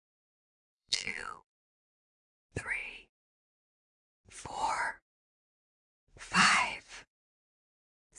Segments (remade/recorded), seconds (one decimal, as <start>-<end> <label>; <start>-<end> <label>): 0.0-0.7 recorded; 0.7-2.3 remade; 2.3-8.2 recorded